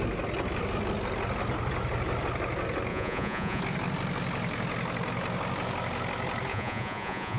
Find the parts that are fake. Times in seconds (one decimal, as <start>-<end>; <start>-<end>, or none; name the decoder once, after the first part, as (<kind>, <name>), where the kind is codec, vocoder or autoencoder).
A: 2.9-3.6 (vocoder, Vocos); 6.5-7.4